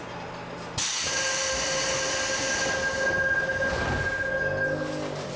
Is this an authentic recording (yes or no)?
yes